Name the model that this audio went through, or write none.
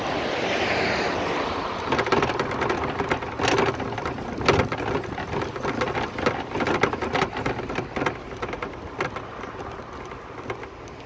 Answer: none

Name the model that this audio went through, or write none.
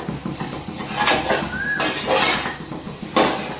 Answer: none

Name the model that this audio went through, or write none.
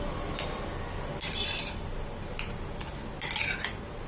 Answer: none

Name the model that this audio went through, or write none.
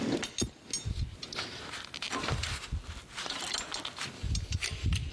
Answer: none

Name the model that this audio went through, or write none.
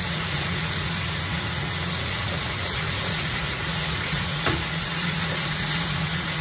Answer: vocoder, Vocos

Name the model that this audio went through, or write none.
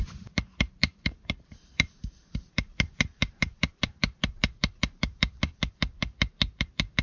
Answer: vocoder, BigVGAN v2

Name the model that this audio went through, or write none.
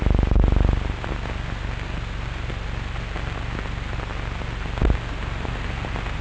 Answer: none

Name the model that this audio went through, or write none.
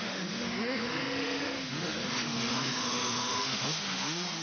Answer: autoencoder, DAC-VAE